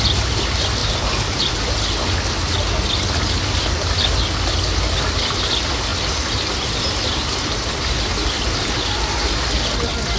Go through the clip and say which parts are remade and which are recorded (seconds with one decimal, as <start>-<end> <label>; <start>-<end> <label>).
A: 0.0-10.2 recorded